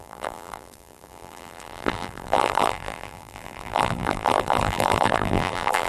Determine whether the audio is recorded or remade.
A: remade